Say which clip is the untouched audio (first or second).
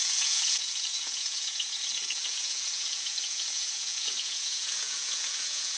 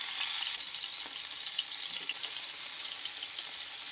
second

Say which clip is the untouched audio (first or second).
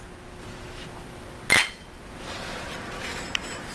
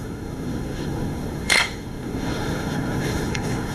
first